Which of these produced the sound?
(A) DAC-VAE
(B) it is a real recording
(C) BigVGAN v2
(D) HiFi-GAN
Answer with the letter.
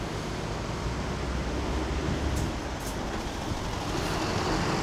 B